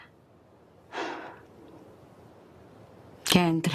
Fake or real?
real